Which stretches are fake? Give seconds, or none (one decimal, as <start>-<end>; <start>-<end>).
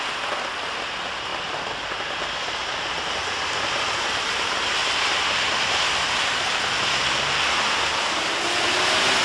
1.3-5.8